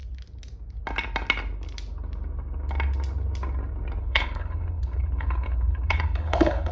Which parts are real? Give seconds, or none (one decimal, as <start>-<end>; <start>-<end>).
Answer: 0.0-4.0